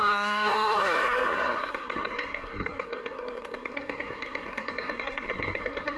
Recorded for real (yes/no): no